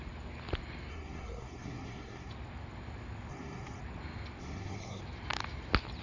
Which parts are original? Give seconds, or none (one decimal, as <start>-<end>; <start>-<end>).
0.0-0.9; 2.3-3.3; 3.8-4.4; 5.0-6.0